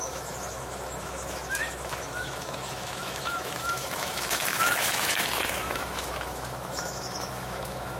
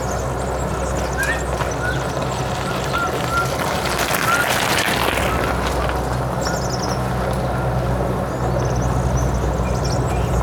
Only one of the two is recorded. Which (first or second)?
second